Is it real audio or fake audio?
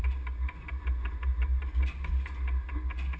real